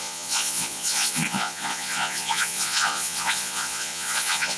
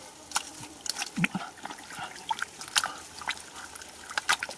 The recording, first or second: second